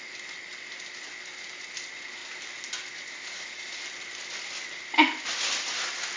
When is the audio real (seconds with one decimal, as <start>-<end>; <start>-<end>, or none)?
0.0-6.2